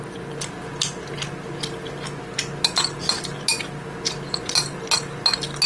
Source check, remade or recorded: recorded